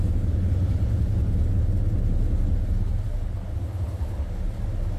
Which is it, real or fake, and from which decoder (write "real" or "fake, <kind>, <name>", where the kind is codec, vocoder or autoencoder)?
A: real